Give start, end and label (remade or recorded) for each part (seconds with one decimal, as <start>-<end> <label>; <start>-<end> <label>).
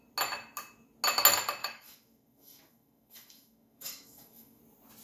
0.0-1.6 recorded; 1.6-4.6 remade; 4.6-5.0 recorded